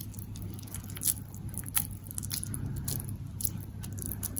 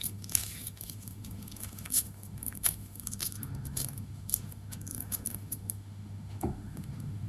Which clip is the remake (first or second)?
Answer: second